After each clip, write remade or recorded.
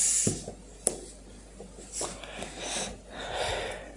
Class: recorded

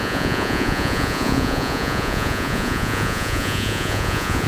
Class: remade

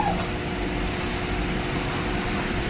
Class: recorded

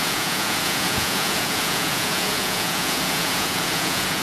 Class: remade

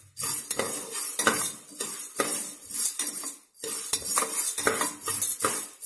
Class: recorded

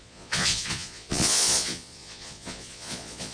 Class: remade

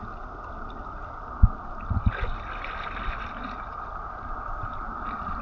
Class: recorded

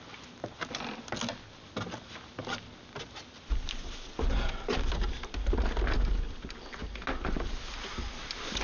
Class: recorded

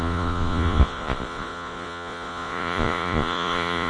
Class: remade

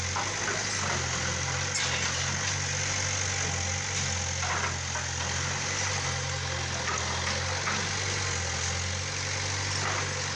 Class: recorded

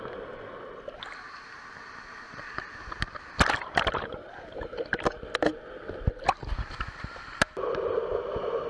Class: recorded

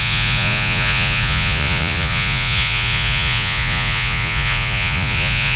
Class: remade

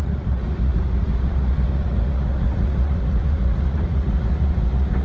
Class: remade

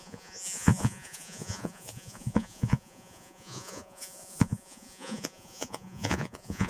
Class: remade